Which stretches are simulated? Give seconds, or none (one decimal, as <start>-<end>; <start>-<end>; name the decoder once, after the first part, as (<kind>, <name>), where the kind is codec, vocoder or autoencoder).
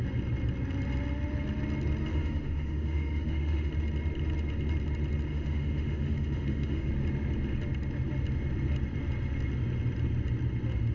2.1-3.7 (autoencoder, DAC-VAE); 5.3-6.9